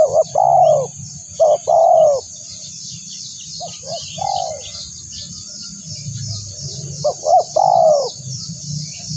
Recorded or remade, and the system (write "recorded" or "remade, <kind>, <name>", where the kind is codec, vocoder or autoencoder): recorded